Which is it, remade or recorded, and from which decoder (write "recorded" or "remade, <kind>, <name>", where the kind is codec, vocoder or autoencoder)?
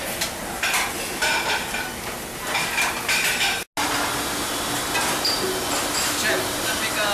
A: recorded